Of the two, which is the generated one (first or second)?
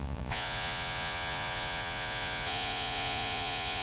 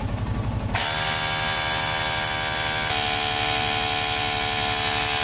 first